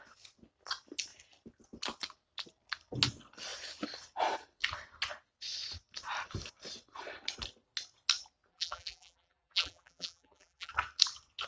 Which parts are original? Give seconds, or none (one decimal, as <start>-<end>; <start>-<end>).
0.0-8.5; 10.7-11.5